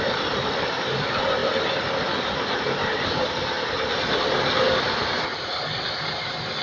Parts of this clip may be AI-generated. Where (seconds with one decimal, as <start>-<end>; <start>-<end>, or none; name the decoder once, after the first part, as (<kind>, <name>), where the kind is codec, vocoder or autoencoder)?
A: none